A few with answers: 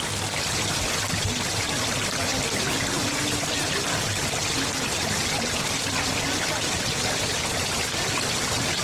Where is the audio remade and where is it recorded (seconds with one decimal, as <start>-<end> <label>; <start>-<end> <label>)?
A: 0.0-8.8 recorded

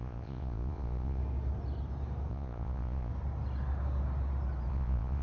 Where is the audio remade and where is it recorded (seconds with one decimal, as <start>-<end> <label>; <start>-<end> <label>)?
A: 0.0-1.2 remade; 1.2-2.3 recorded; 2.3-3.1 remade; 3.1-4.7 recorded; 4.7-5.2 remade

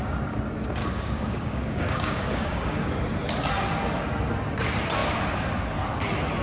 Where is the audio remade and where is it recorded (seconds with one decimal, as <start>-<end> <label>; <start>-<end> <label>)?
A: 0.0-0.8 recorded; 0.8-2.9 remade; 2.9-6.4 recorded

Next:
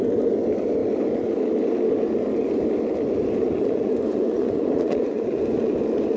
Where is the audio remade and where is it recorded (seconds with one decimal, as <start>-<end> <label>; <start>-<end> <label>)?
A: 0.0-3.4 recorded; 3.4-5.7 remade; 5.7-6.2 recorded

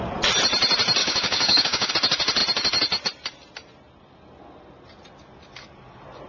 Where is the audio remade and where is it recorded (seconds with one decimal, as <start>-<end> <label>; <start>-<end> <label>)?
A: 0.0-1.0 recorded; 1.0-1.9 remade; 1.9-6.3 recorded

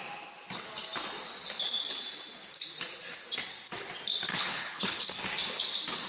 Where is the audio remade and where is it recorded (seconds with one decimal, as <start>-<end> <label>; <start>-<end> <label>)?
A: 0.0-4.3 recorded; 4.3-5.2 remade; 5.2-6.1 recorded